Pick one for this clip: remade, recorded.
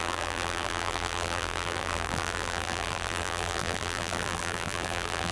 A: remade